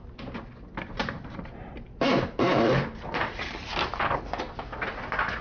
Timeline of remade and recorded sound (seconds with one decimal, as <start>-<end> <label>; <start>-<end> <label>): 0.0-1.0 recorded; 1.0-3.6 remade; 3.6-5.4 recorded